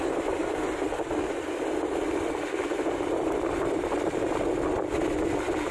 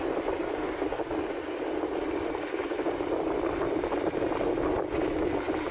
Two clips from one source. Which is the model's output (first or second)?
second